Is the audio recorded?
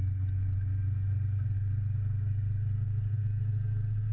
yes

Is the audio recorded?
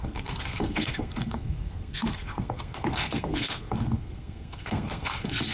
no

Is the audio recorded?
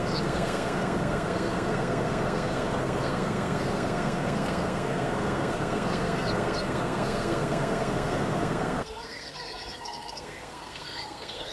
no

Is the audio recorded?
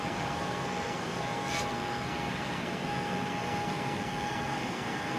no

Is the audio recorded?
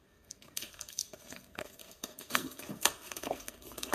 no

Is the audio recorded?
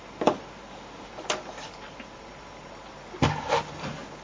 yes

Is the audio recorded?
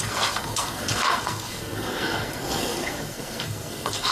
no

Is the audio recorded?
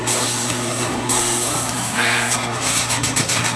no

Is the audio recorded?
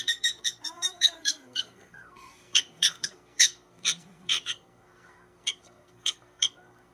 no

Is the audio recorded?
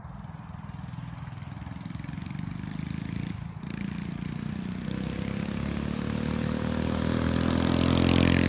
yes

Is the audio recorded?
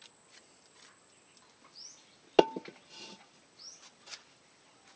yes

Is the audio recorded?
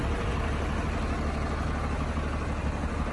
yes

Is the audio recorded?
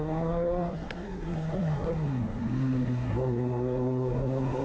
no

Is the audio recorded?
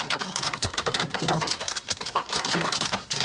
no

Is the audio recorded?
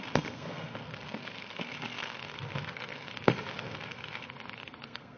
no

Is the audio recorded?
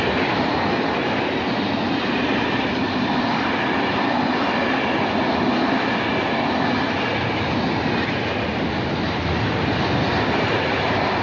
yes